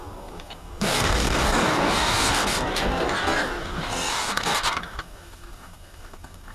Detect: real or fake fake